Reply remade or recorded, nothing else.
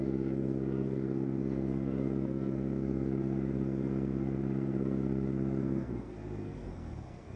remade